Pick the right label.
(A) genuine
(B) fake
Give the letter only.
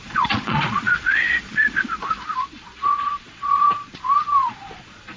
B